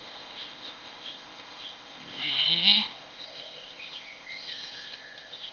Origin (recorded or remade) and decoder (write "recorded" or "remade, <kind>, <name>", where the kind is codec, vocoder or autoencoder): remade, codec, ZipCodec